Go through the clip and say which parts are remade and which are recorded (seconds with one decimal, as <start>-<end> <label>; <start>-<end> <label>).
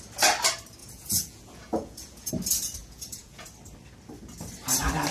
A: 0.0-0.8 recorded; 0.8-2.3 remade; 2.3-2.8 recorded; 2.8-3.5 remade; 3.5-5.1 recorded